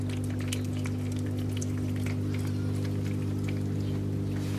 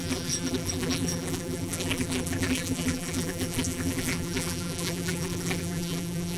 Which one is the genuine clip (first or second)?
first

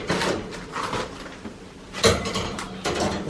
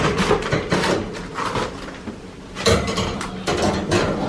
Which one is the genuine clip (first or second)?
second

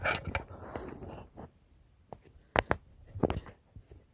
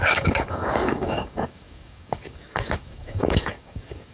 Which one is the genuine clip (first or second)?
first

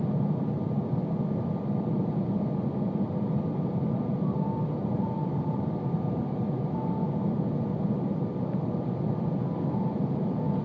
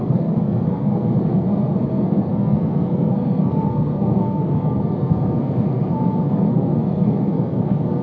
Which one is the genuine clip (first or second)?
first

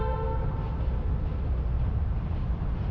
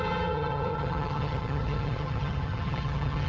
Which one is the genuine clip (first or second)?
first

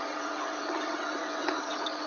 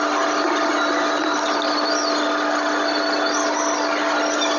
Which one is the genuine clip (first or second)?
second